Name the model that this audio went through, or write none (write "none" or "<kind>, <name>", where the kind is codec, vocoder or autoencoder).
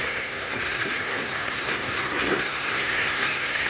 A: codec, SNAC